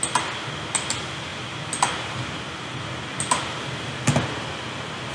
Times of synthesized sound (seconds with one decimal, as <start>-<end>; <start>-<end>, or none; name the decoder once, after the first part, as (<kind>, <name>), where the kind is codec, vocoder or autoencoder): none